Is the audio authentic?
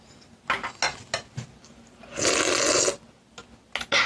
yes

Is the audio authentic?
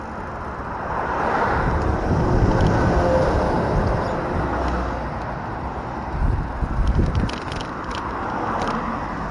yes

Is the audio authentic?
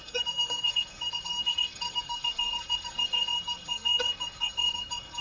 no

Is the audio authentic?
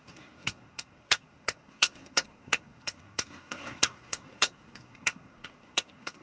no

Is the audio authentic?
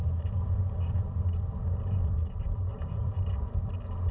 yes